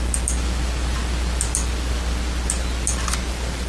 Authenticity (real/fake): real